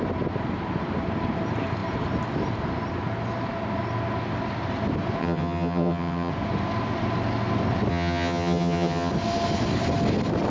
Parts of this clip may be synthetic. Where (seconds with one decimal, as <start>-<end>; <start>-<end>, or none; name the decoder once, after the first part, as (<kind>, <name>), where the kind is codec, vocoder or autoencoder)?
5.2-6.3 (vocoder, HiFi-GAN); 7.9-9.1